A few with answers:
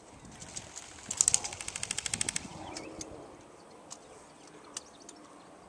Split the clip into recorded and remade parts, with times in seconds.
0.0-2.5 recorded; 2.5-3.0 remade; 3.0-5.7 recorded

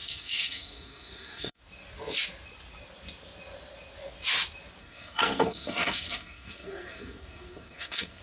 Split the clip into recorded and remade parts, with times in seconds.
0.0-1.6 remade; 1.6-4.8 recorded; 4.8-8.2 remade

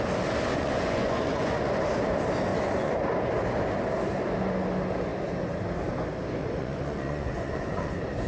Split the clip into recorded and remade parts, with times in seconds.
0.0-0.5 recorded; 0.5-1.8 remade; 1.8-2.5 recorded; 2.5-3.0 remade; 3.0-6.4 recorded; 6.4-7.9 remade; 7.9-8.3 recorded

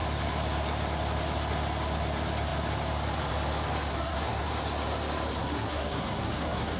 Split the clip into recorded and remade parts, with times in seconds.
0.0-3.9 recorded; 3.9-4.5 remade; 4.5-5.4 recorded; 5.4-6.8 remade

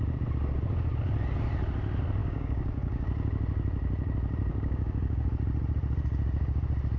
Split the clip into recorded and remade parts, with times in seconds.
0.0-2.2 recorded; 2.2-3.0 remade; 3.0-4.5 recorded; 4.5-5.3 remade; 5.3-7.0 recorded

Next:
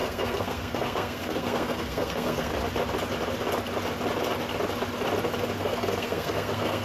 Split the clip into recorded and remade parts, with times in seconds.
0.0-2.5 remade; 2.5-5.6 recorded; 5.6-6.8 remade

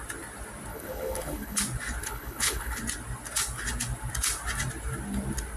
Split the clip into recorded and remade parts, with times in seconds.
0.0-0.7 recorded; 0.7-1.6 remade; 1.6-2.0 recorded; 2.0-2.8 remade; 2.8-5.6 recorded